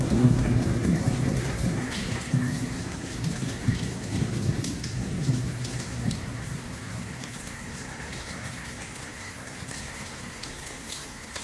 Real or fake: fake